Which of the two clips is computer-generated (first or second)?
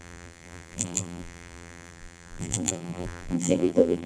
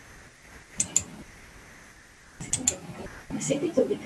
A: first